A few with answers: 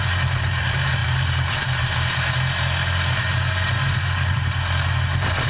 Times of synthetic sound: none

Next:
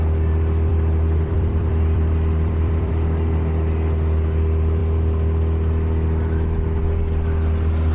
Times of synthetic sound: 0.7-2.9